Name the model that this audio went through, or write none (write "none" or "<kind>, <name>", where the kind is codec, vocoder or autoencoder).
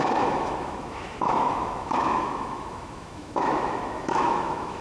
autoencoder, DAC-VAE